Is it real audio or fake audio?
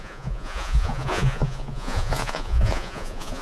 fake